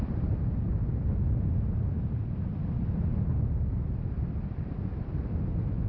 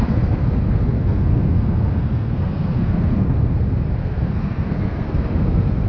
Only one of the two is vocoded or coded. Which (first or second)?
second